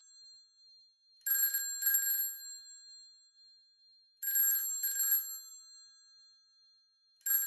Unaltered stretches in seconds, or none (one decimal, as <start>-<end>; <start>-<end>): 0.0-7.5